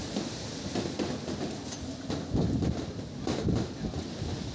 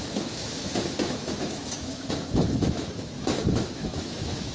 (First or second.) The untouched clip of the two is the first